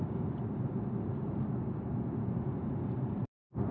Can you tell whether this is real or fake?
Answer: real